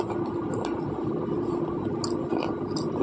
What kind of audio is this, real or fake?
real